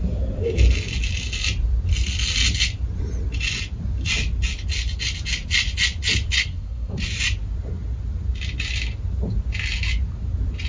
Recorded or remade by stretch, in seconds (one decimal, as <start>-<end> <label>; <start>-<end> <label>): 0.0-6.4 recorded; 6.4-7.0 remade; 7.0-10.7 recorded